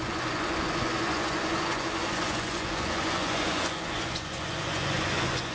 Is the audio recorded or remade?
remade